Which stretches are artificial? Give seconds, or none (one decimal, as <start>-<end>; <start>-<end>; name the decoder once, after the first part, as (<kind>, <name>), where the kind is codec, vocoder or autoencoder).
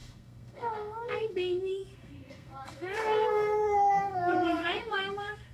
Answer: 0.0-5.5 (codec, SNAC)